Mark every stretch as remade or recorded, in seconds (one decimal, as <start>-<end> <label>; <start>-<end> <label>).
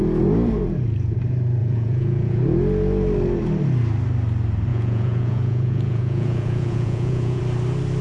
0.0-1.6 recorded; 1.6-2.4 remade; 2.4-4.7 recorded; 4.7-7.4 remade; 7.4-8.0 recorded